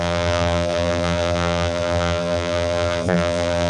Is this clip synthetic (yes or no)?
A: yes